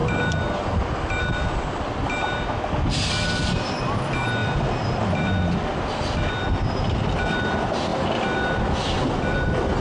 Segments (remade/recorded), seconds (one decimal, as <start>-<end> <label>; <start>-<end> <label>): 0.0-9.8 recorded